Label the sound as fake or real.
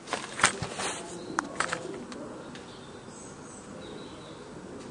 real